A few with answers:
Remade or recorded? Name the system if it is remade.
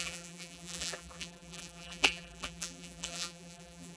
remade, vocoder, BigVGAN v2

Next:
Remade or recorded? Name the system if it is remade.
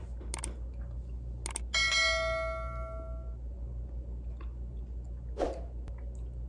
recorded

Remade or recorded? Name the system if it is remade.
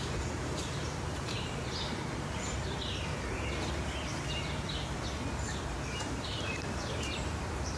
remade, vocoder, BigVGAN v2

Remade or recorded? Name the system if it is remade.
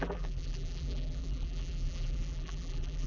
remade, vocoder, BigVGAN v2